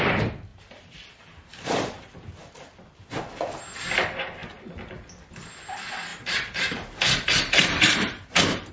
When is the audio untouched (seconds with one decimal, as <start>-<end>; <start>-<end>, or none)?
0.0-0.5; 2.5-6.1